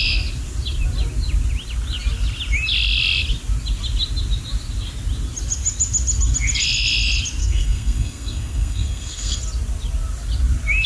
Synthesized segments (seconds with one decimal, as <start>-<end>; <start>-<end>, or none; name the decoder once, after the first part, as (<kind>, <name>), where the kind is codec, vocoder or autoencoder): 7.4-9.4 (codec, SNAC)